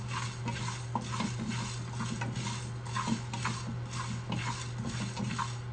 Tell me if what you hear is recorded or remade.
recorded